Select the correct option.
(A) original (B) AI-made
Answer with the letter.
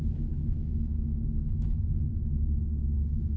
B